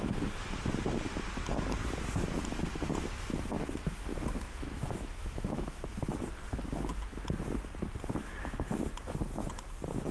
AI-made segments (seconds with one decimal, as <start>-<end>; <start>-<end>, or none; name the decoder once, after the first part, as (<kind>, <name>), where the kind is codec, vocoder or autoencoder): 4.1-5.9 (autoencoder, DAC-VAE); 8.2-8.7